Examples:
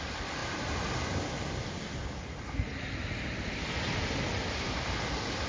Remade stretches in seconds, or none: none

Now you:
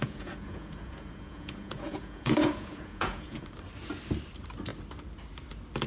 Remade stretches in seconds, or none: 0.0-3.5 (vocoder, Vocos)